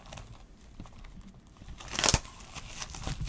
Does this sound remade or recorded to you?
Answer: recorded